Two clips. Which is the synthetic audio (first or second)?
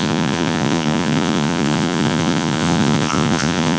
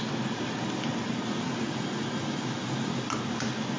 first